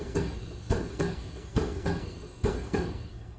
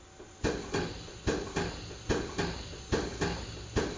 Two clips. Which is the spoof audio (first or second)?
first